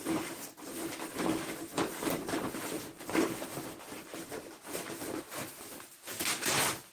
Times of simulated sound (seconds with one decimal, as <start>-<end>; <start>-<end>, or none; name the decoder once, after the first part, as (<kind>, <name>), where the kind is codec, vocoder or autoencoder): 0.0-0.7 (vocoder, BigVGAN v2); 4.1-6.2

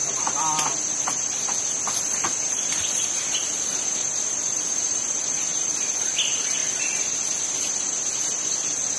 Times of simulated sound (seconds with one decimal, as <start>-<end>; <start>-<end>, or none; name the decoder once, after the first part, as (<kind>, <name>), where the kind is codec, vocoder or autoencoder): 0.0-9.0 (vocoder, BigVGAN v2)

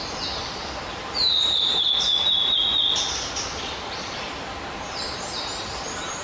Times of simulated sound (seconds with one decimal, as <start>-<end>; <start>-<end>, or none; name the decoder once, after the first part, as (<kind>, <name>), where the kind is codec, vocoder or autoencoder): 0.0-0.4 (vocoder, BigVGAN v2); 0.9-1.9; 5.6-6.2